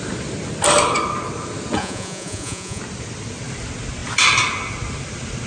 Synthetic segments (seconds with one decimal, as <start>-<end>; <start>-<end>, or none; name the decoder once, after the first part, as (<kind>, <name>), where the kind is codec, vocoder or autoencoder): 1.8-2.8 (vocoder, Vocos)